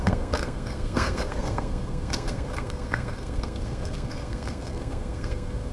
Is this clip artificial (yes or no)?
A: yes